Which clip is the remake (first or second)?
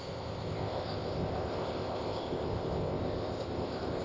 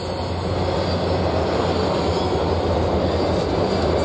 first